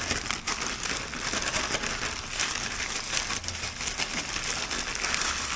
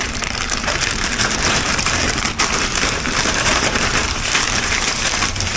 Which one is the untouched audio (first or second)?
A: first